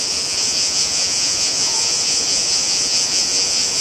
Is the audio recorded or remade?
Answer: remade